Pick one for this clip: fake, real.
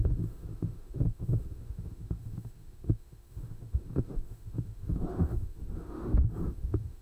fake